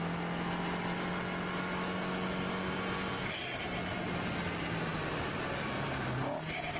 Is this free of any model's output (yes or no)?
yes